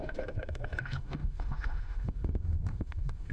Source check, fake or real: fake